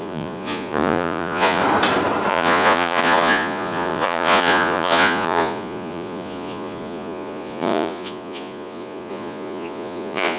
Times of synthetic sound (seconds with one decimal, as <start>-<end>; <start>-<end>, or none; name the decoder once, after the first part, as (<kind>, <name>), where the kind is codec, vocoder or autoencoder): 0.0-1.6 (vocoder, Vocos); 2.3-10.4